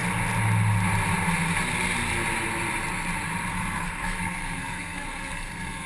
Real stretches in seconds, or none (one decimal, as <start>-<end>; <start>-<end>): 0.0-3.5